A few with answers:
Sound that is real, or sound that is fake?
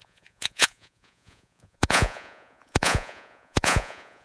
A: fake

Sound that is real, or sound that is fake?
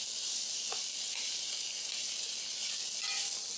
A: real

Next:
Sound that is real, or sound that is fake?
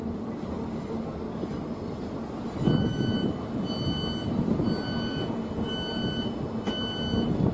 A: real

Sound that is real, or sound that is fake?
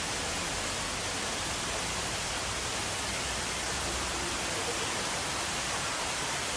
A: real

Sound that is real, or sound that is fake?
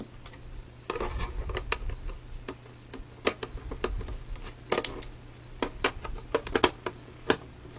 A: real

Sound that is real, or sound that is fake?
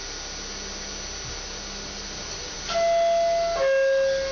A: real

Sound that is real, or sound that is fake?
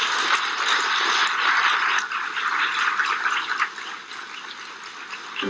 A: real